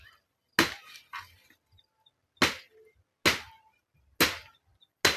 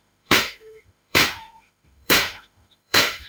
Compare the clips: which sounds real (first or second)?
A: first